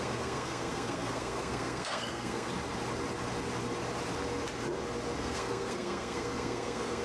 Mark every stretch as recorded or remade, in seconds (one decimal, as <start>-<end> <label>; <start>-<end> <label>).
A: 0.0-2.5 remade; 2.5-5.2 recorded; 5.2-7.0 remade